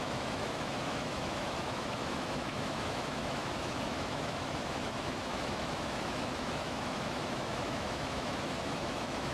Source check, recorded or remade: remade